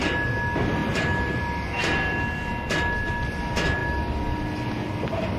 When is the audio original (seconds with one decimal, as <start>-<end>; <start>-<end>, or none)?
0.0-5.4